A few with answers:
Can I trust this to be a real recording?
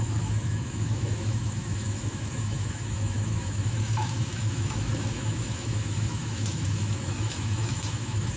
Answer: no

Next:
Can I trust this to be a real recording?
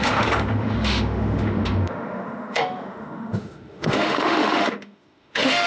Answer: no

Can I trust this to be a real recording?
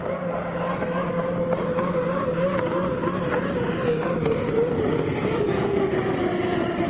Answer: yes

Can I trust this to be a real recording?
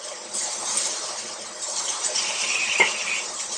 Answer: yes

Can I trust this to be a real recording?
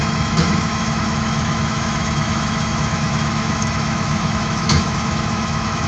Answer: no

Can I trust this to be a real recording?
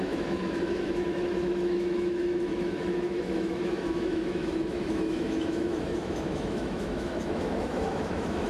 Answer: no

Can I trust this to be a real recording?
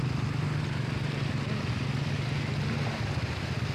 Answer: yes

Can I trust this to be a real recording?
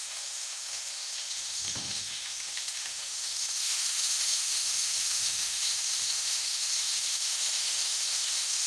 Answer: no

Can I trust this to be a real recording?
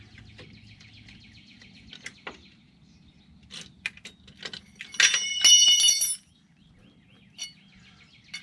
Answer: yes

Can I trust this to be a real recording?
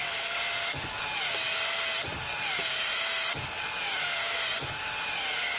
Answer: yes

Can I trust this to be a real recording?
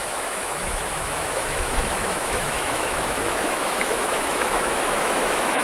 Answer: no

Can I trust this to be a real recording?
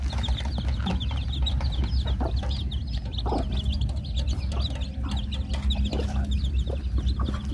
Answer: yes